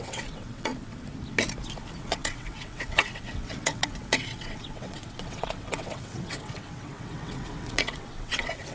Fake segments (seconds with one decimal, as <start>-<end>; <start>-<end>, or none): 0.0-0.7; 2.0-8.7